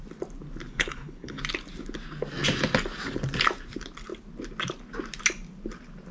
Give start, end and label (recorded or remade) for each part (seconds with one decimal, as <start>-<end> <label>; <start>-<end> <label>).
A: 0.0-0.7 recorded; 0.7-1.4 remade; 1.4-6.1 recorded

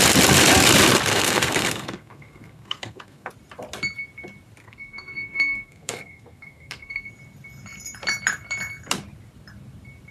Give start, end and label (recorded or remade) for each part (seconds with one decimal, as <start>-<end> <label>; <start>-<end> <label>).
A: 0.0-1.1 recorded; 1.1-3.3 remade; 3.3-4.6 recorded; 4.6-7.1 remade; 7.1-10.1 recorded

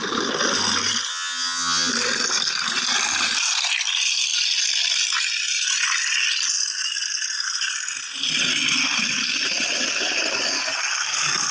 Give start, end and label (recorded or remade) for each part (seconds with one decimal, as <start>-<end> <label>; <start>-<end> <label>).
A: 0.0-1.1 recorded; 1.1-1.9 remade; 1.9-11.5 recorded

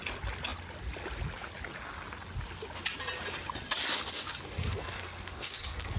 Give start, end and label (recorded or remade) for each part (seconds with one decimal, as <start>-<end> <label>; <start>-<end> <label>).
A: 0.0-4.6 recorded; 4.6-6.0 remade

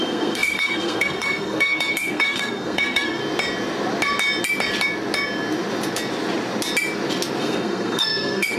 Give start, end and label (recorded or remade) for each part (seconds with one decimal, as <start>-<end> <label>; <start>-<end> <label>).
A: 0.0-3.2 remade; 3.2-7.4 recorded; 7.4-8.6 remade